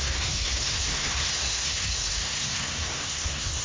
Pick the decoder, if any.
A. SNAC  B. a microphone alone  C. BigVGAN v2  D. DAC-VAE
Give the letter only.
A